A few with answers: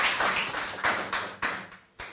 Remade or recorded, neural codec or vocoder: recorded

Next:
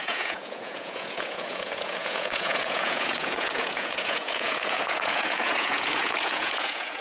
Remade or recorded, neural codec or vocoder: remade, vocoder, Vocos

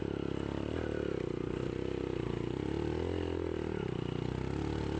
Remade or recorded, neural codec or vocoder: recorded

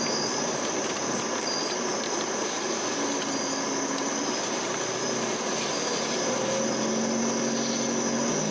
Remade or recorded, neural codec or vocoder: recorded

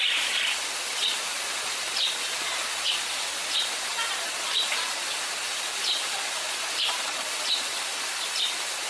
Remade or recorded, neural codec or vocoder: recorded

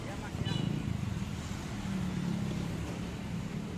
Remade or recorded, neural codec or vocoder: recorded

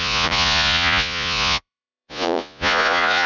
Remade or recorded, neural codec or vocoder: remade, vocoder, Vocos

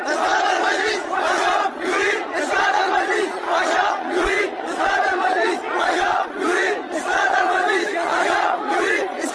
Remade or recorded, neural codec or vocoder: remade, vocoder, Vocos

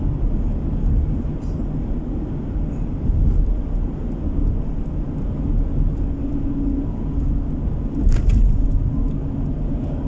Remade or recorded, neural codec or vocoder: recorded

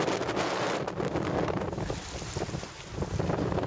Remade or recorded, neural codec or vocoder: recorded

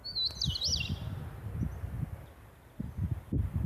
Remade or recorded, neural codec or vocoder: recorded